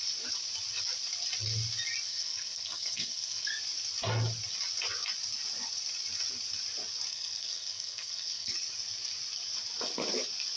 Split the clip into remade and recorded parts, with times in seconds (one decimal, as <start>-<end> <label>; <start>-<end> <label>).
0.0-2.1 recorded; 2.1-3.5 remade; 3.5-7.1 recorded; 7.1-8.5 remade; 8.5-10.6 recorded